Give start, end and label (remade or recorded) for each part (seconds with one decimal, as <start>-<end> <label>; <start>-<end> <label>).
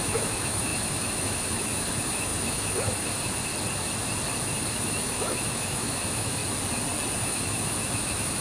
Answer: 0.0-3.5 remade; 3.5-4.7 recorded; 4.7-6.4 remade; 6.4-7.2 recorded; 7.2-8.4 remade